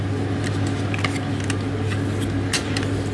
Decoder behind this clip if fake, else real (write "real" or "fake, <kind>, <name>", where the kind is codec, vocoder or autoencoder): real